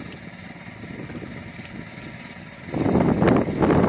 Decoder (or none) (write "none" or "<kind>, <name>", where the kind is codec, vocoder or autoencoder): none